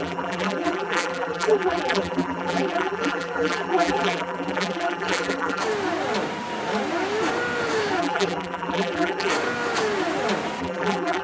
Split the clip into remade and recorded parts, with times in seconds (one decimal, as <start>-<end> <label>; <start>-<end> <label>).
0.0-5.6 remade; 5.6-8.0 recorded; 8.0-9.3 remade; 9.3-10.6 recorded; 10.6-11.2 remade